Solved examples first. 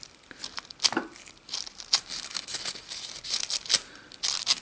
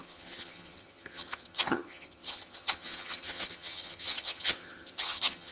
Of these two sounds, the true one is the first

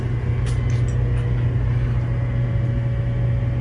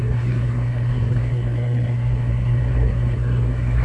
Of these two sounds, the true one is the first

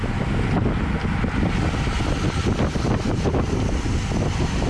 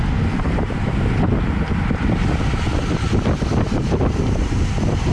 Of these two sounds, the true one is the first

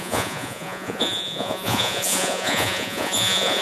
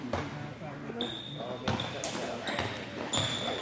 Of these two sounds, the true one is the second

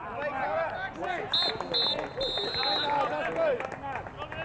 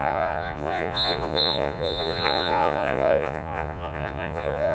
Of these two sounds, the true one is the first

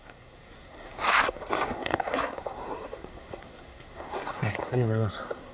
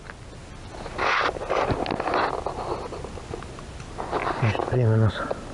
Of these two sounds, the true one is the second